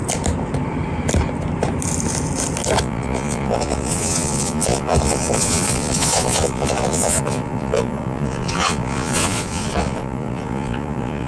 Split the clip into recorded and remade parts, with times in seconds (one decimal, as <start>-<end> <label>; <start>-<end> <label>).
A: 0.0-2.8 recorded; 2.8-11.3 remade